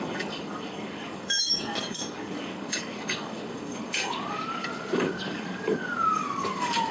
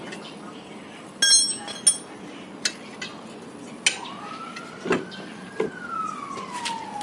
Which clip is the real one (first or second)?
second